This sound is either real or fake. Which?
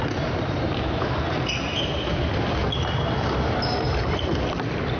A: real